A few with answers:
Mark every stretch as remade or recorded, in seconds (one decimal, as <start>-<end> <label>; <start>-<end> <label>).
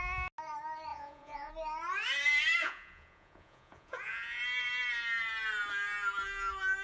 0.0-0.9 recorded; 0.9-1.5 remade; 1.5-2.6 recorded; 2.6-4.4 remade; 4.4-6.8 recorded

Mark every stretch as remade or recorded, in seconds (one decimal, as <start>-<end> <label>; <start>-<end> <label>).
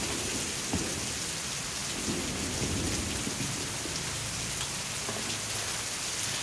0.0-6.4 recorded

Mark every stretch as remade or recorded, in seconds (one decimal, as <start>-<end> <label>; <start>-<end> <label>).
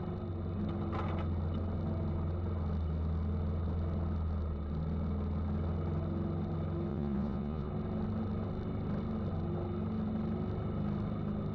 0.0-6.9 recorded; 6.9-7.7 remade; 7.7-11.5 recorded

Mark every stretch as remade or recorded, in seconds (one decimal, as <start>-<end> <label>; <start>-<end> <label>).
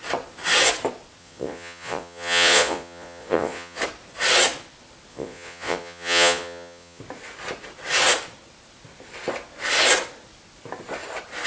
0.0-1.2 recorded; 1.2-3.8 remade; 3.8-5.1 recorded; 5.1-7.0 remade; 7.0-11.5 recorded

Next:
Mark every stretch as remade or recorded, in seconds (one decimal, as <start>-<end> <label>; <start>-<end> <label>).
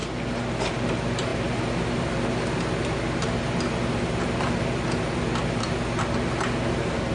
0.0-7.1 recorded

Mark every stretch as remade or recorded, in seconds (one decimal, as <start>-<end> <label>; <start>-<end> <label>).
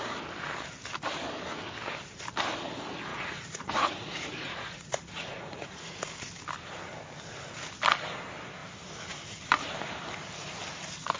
0.0-3.1 recorded; 3.1-6.0 remade; 6.0-11.2 recorded